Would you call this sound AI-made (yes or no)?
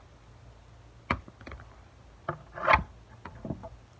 no